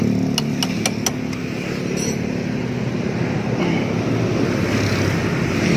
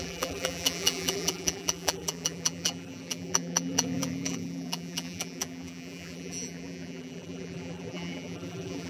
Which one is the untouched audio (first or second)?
first